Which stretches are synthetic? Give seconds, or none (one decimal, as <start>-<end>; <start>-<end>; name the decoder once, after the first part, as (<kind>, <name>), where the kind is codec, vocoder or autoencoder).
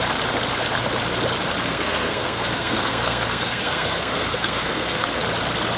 1.7-5.2 (codec, SNAC)